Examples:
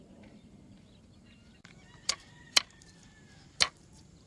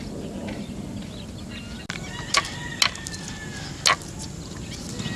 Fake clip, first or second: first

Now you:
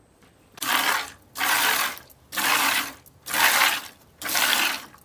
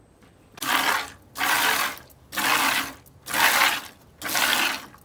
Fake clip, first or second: first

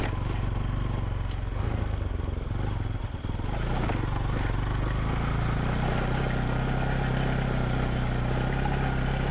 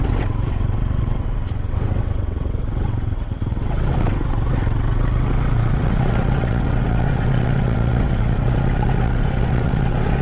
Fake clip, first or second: second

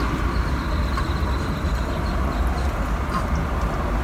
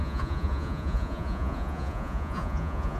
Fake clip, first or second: second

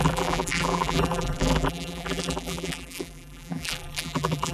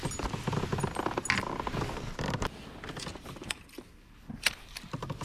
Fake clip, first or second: first